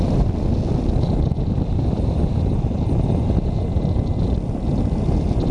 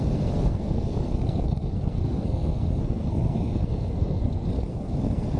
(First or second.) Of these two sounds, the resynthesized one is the second